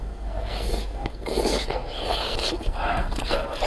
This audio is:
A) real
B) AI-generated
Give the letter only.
B